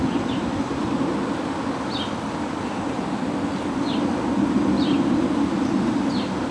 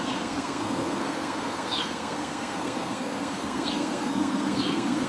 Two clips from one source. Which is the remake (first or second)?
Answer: second